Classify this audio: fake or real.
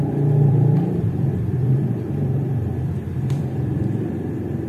fake